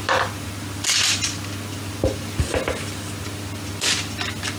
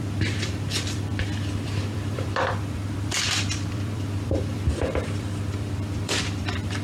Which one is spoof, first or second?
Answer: second